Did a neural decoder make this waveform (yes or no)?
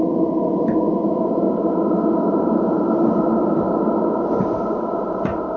no